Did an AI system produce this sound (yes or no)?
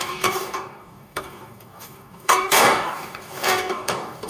yes